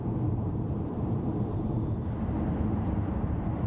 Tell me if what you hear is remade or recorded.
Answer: remade